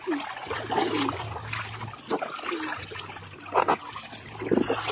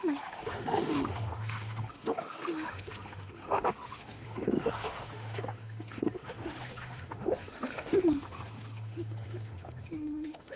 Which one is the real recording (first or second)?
first